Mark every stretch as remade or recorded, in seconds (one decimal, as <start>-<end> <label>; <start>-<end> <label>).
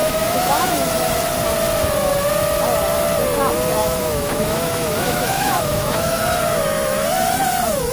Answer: 0.0-0.7 remade; 0.7-3.8 recorded; 3.8-6.2 remade; 6.2-7.9 recorded